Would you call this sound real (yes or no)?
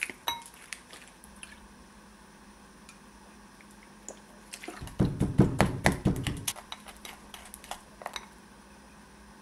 yes